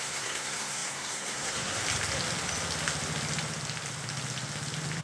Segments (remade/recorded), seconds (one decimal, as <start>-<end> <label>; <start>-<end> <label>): 0.0-1.8 remade; 1.8-5.0 recorded